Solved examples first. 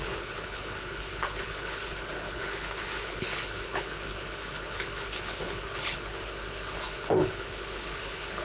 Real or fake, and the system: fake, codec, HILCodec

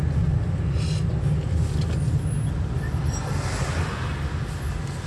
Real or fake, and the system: real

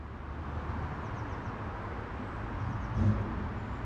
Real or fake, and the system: real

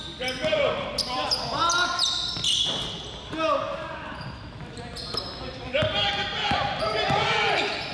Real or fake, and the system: real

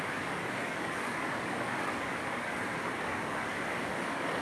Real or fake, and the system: fake, codec, DAC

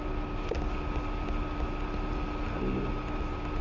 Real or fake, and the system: real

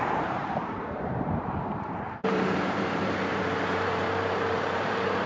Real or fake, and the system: fake, vocoder, BigVGAN v2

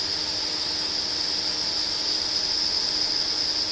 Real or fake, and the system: real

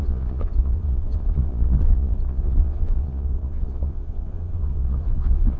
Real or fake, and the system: fake, vocoder, Vocos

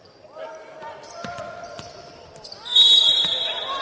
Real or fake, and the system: real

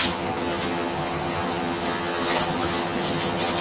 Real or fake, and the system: fake, vocoder, HiFi-GAN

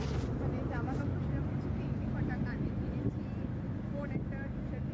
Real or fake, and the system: real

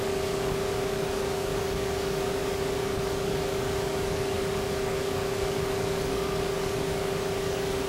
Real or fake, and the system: fake, codec, DAC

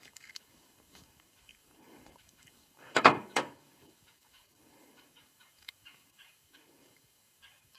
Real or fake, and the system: fake, codec, DAC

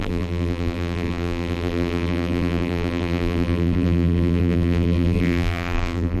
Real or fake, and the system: fake, vocoder, BigVGAN v2